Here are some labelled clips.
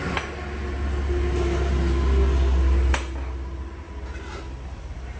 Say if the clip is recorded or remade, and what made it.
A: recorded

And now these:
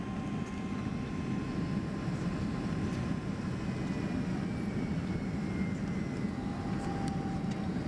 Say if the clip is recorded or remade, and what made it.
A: recorded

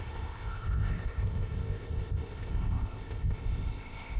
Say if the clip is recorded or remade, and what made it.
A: remade, codec, ZipCodec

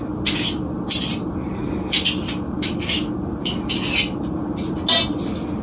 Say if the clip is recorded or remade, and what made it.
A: recorded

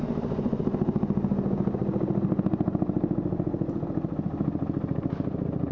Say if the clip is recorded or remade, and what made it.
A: recorded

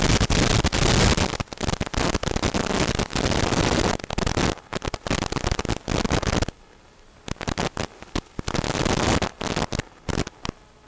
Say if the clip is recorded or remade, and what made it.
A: recorded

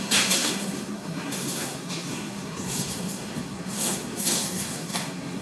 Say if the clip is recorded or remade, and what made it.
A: remade, codec, SNAC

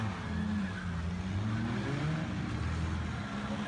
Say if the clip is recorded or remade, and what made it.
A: recorded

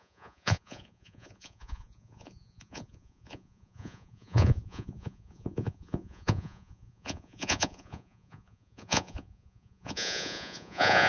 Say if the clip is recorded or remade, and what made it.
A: remade, vocoder, Vocos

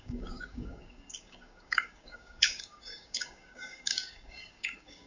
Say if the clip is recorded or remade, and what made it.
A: remade, codec, DAC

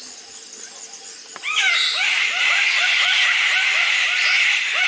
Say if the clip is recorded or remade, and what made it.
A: recorded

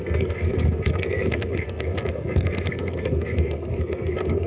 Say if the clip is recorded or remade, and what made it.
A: remade, codec, SNAC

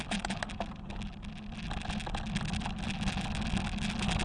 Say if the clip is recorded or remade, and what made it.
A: recorded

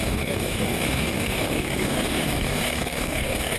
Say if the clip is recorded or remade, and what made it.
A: remade, codec, DAC